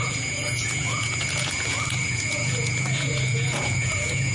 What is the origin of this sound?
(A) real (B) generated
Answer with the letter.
B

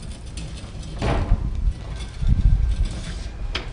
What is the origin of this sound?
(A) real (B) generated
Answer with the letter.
A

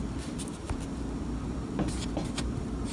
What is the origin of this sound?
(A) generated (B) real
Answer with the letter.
B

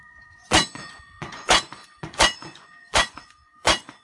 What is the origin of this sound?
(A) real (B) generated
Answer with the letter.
B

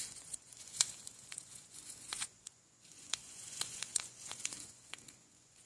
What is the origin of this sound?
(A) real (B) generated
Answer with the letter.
B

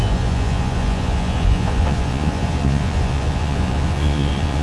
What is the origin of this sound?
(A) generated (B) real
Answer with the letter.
A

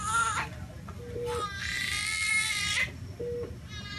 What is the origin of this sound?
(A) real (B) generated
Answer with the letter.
A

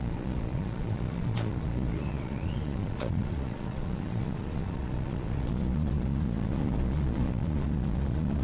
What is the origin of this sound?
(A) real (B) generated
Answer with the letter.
B